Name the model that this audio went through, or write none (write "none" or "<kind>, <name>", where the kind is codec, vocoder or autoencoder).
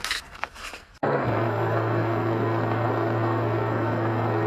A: codec, SNAC